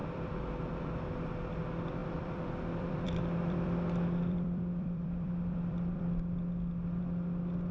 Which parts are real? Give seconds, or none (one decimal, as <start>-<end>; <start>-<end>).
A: 0.7-2.0; 6.2-7.7